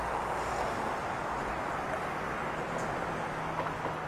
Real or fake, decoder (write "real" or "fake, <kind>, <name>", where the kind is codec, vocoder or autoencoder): real